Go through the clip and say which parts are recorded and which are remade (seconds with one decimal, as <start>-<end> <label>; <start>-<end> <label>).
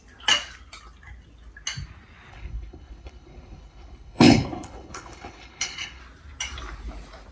0.0-2.3 recorded; 2.3-6.0 remade; 6.0-7.3 recorded